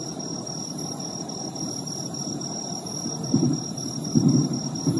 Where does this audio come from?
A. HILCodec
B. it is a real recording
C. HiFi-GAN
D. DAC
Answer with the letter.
B